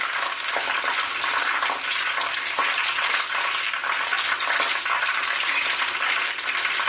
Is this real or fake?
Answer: real